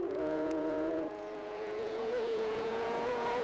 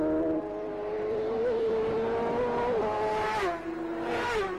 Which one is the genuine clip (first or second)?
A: second